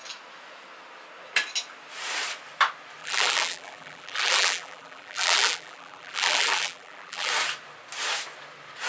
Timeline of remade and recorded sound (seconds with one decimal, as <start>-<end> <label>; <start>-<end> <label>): 0.0-3.0 recorded; 3.0-7.3 remade; 7.3-8.9 recorded